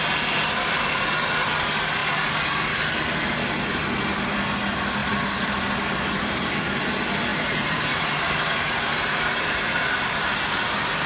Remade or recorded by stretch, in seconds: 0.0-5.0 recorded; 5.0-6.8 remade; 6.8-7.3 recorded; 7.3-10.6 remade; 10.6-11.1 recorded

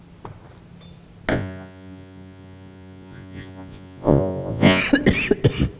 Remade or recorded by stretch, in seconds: 0.0-1.3 recorded; 1.3-4.8 remade; 4.8-5.8 recorded

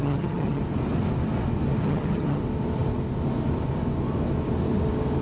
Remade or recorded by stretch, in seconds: 0.0-0.6 remade; 0.6-1.8 recorded; 1.8-2.4 remade; 2.4-5.2 recorded

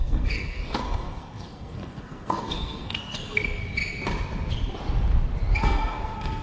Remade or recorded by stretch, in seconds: 0.0-3.6 remade; 3.6-5.6 recorded; 5.6-6.4 remade